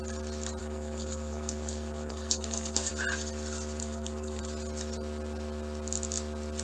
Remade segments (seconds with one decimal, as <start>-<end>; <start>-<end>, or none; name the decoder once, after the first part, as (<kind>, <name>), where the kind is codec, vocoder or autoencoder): 0.6-2.9 (codec, SNAC); 3.8-4.4

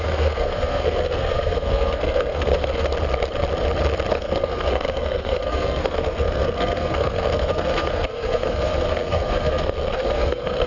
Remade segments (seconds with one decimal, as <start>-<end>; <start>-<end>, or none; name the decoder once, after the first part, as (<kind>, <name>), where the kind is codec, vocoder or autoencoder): 0.0-2.9 (codec, SNAC); 4.1-10.7

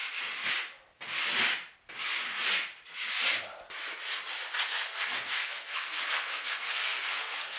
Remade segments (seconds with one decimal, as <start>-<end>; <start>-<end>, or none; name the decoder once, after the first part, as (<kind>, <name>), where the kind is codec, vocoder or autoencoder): 4.6-7.6 (codec, SNAC)

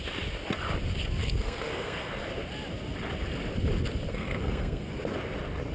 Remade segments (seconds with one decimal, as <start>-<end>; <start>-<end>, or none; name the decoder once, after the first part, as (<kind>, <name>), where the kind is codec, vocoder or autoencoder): 1.2-2.1 (codec, SNAC); 4.1-4.9

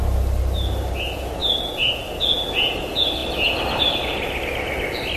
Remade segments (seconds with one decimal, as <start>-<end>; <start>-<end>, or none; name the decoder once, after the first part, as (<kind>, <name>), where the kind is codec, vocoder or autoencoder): none